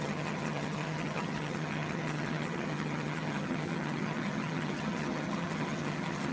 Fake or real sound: fake